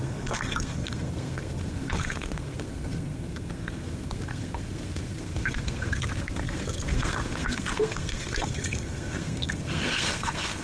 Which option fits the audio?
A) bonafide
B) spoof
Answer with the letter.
B